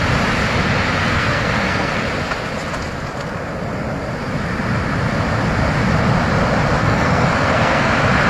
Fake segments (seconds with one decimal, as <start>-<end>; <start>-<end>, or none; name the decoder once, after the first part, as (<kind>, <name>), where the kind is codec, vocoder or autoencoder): 1.0-2.0 (codec, SNAC); 6.8-7.9